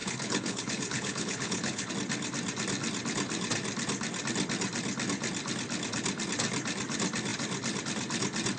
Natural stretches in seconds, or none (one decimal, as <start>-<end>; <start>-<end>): 1.9-8.6